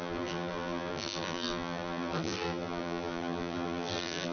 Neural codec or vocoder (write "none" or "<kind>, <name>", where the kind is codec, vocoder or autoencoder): vocoder, BigVGAN v2